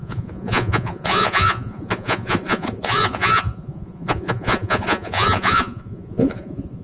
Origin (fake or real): fake